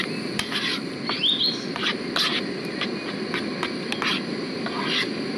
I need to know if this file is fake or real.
real